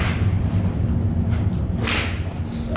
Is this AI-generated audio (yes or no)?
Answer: no